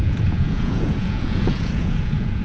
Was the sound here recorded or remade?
remade